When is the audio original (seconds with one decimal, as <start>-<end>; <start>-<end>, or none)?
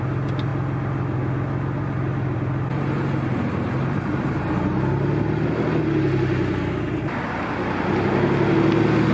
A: 0.0-9.1